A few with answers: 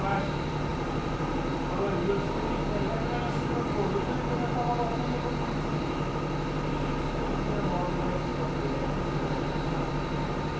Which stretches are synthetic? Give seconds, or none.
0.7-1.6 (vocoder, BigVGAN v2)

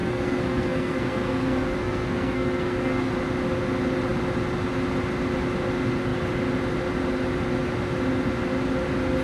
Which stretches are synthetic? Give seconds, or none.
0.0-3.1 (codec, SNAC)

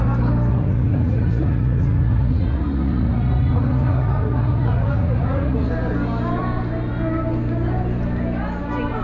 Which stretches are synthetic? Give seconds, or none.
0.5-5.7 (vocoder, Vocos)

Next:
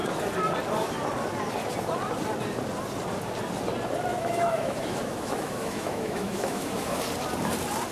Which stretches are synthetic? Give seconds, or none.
4.1-7.0 (autoencoder, DAC-VAE)

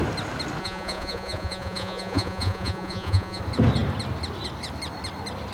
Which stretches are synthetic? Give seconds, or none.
0.6-3.4 (vocoder, Vocos)

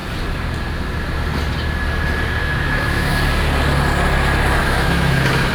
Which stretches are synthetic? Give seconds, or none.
2.4-3.1 (autoencoder, DAC-VAE); 4.6-5.5

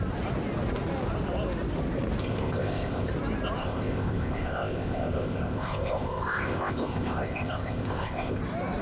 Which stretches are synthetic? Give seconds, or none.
2.2-3.1 (codec, ZipCodec); 3.6-8.4